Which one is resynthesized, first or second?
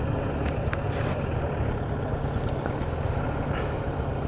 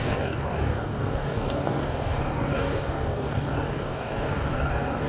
second